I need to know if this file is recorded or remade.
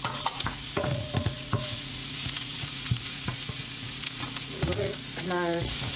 remade